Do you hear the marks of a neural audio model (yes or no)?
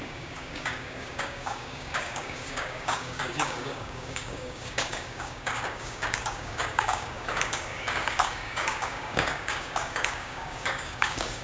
yes